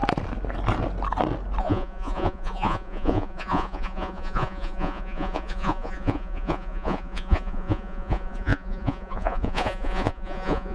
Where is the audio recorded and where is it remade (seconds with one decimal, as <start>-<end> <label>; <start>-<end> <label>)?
0.0-1.6 recorded; 1.6-10.7 remade